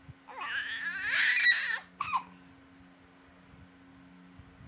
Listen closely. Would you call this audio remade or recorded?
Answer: recorded